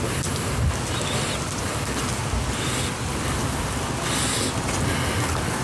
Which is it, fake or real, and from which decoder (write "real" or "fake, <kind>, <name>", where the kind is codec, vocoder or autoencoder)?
real